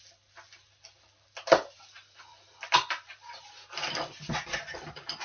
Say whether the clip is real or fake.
real